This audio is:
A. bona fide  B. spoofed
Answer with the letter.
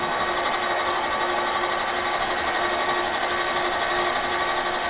A